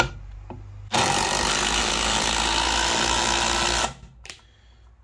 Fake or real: real